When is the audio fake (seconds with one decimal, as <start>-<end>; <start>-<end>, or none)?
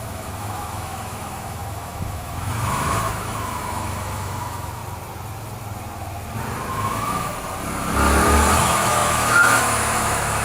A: 0.0-4.8; 6.7-7.3; 8.6-10.4